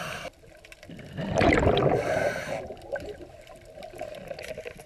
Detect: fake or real fake